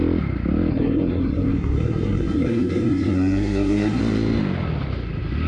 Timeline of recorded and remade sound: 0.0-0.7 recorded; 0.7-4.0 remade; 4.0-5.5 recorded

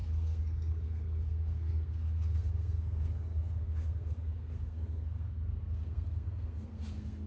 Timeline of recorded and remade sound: 0.0-7.3 remade

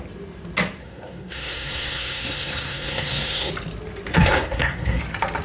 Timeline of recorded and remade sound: 0.0-0.8 recorded; 0.8-3.5 remade; 3.5-4.1 recorded; 4.1-5.0 remade; 5.0-5.4 recorded

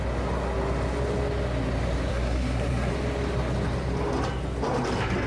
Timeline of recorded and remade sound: 0.0-2.1 recorded; 2.1-2.9 remade; 2.9-5.3 recorded

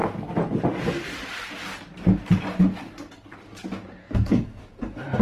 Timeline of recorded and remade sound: 0.0-4.0 recorded; 4.0-4.6 remade; 4.6-5.2 recorded

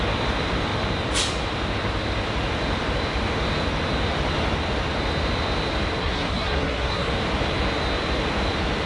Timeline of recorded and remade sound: 0.0-6.0 recorded; 6.0-7.1 remade; 7.1-8.9 recorded

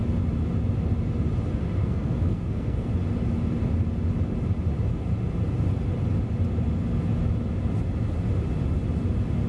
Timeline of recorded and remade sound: 0.0-1.8 recorded; 1.8-2.9 remade; 2.9-9.5 recorded